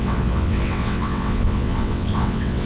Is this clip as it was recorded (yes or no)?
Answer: no